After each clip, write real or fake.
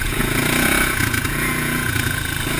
fake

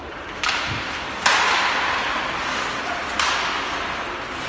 real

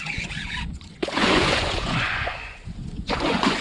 fake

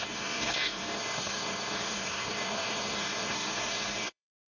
fake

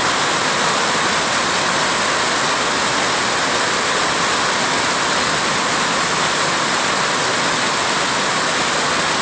real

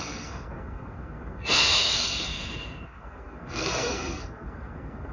fake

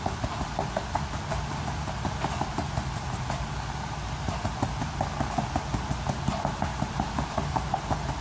real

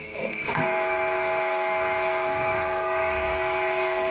fake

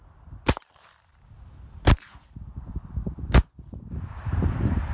fake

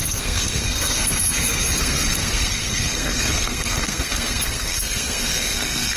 fake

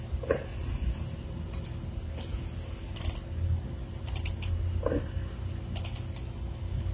real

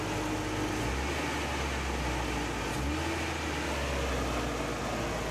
real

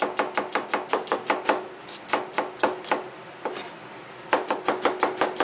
real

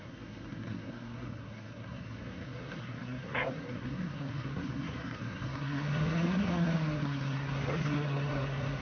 fake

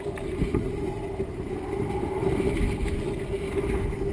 real